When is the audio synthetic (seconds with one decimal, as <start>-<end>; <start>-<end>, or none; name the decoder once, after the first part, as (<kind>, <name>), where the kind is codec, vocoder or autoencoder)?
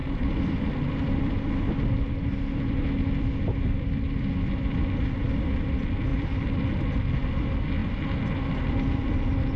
none